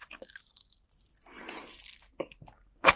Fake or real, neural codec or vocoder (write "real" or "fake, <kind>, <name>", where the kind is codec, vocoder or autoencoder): fake, vocoder, BigVGAN v2